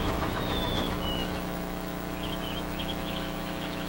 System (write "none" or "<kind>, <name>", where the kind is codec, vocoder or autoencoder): autoencoder, DAC-VAE